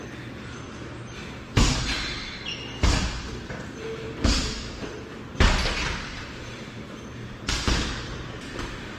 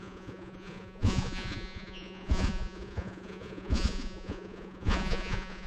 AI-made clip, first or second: second